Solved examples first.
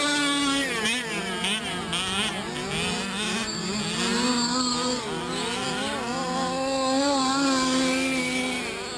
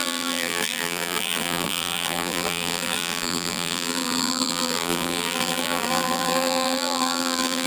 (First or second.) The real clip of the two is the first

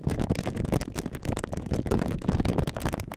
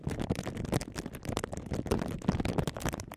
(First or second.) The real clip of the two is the second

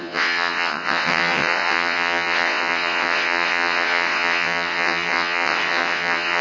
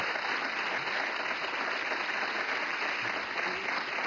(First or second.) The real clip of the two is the second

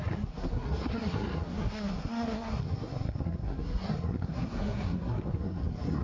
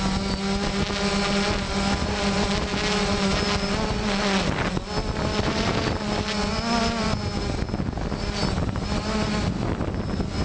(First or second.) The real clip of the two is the second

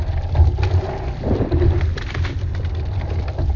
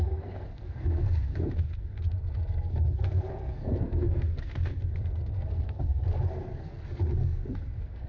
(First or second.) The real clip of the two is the first